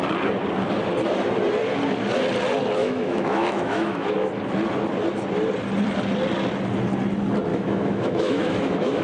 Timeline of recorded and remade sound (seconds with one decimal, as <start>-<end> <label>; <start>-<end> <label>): 0.0-2.8 recorded; 2.8-4.3 remade; 4.3-7.5 recorded; 7.5-9.0 remade